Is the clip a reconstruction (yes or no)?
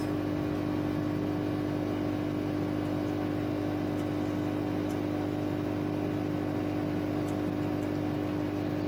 no